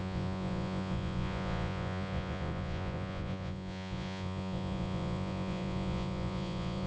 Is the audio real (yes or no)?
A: no